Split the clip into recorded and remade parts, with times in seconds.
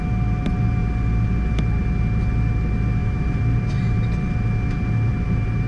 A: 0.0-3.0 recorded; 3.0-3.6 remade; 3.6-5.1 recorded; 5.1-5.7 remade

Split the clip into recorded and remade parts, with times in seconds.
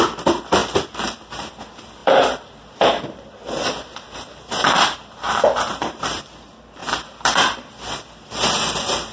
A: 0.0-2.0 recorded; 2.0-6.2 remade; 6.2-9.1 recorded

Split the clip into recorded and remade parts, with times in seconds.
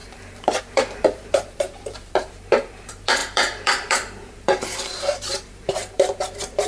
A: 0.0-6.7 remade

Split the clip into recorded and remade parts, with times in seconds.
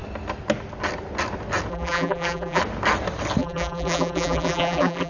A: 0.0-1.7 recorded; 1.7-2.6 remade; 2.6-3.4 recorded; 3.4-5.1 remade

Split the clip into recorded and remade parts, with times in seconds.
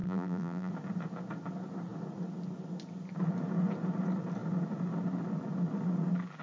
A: 0.0-0.7 remade; 0.7-6.4 recorded